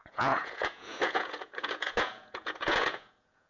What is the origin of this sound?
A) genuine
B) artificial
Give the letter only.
B